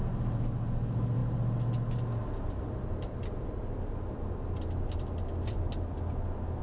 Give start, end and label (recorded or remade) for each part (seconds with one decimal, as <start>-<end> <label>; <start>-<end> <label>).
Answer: 0.0-6.6 recorded